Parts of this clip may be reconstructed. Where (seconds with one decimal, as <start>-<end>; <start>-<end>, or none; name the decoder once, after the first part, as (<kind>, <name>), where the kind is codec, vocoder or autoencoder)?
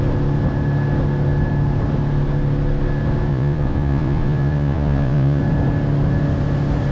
3.3-5.4 (vocoder, Vocos)